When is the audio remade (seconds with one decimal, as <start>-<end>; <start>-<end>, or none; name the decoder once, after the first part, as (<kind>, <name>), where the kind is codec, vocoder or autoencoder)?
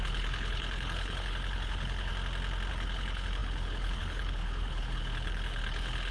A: 0.0-2.1 (codec, HILCodec); 2.7-6.1